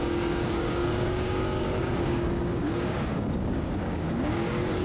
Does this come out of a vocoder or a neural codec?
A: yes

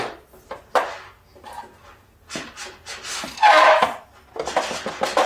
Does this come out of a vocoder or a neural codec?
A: no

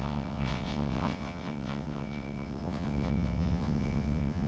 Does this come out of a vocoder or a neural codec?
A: yes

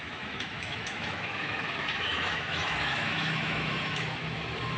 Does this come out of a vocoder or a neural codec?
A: yes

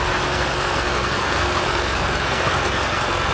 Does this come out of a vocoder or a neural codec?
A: yes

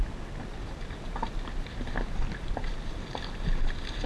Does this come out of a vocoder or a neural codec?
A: no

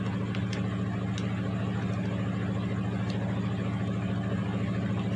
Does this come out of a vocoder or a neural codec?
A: no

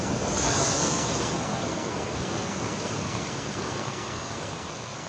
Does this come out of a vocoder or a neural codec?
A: yes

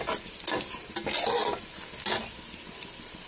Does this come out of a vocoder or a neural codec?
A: no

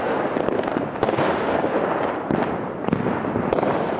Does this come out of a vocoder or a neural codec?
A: no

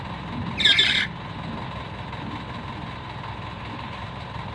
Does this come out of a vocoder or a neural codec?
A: no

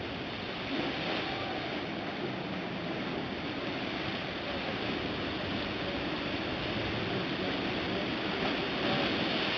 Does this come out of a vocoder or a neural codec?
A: no